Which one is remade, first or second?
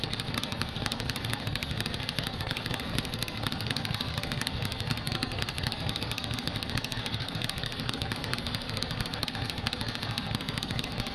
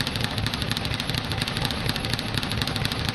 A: first